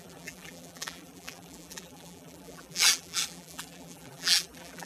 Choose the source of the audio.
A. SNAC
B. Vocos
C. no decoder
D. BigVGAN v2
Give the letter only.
D